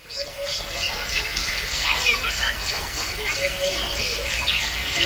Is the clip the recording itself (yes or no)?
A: no